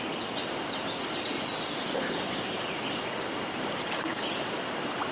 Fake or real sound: real